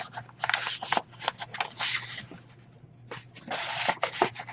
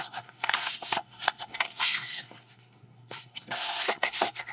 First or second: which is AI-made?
second